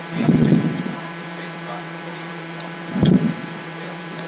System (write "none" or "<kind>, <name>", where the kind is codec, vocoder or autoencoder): vocoder, WaveNeXt